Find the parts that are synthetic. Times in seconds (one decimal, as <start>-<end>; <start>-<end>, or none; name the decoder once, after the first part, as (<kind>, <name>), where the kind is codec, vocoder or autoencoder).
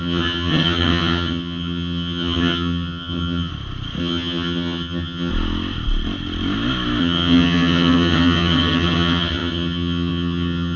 0.0-3.5 (vocoder, HiFi-GAN); 4.0-5.3; 7.0-10.8